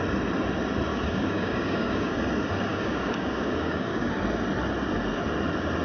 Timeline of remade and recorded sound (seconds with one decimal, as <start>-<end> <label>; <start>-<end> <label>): 0.0-0.9 recorded; 0.9-2.1 remade; 2.1-2.7 recorded; 2.7-4.1 remade; 4.1-5.8 recorded